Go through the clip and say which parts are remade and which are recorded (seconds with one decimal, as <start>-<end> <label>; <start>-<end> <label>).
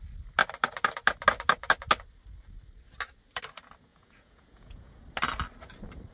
0.0-3.9 recorded; 3.9-5.0 remade; 5.0-6.1 recorded